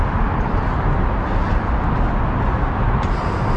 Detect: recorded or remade recorded